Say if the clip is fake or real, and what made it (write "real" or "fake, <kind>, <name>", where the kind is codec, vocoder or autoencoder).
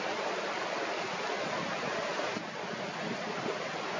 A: real